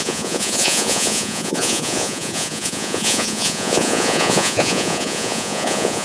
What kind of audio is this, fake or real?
fake